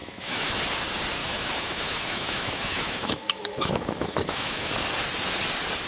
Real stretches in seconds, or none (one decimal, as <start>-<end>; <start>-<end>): 0.6-1.2; 4.7-5.9